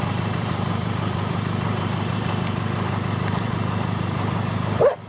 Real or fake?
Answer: fake